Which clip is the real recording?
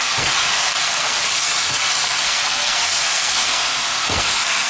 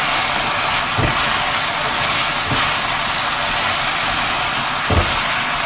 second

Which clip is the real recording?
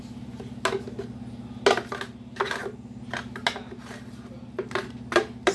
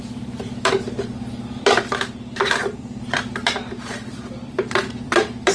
first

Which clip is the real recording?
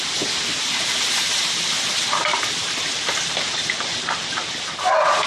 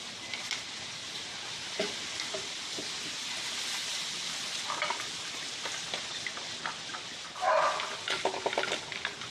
second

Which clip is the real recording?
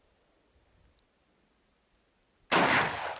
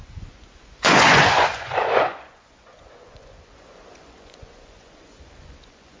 first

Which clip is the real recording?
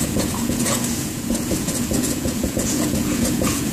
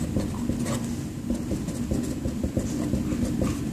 second